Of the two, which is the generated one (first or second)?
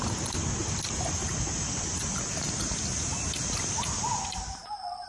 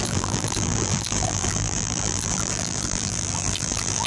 second